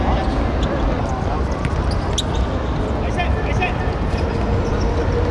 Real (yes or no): yes